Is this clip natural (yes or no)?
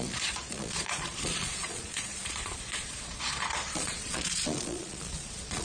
no